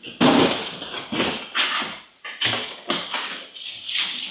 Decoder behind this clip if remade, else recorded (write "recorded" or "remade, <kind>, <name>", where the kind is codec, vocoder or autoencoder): recorded